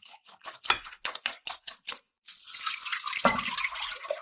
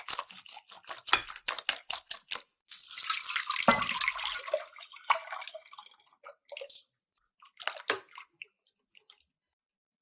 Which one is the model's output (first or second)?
first